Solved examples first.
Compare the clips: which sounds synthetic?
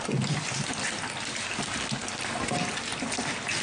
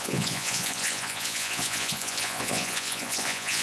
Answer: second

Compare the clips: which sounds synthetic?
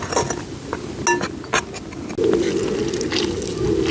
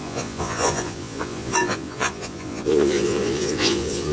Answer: second